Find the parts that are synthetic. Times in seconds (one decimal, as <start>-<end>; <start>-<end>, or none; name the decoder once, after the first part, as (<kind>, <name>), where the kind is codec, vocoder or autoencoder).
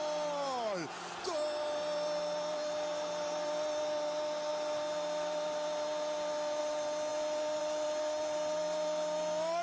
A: none